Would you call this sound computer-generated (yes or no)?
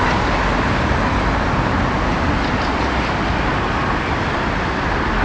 no